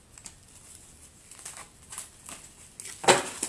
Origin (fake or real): real